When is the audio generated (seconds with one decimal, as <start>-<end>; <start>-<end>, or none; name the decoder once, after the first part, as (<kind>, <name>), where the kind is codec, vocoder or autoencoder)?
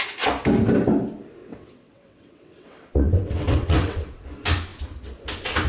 1.4-4.3 (vocoder, WaveNeXt)